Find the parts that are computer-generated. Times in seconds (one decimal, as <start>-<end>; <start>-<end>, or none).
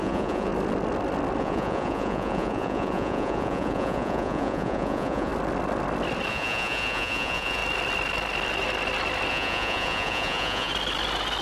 0.0-0.5; 1.4-5.3; 6.3-7.6; 9.3-10.7